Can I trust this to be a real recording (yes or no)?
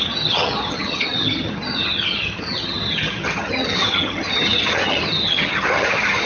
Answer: no